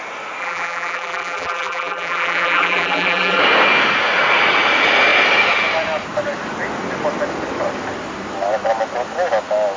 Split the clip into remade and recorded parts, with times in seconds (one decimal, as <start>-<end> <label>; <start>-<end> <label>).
0.0-0.4 recorded; 0.4-3.4 remade; 3.4-9.8 recorded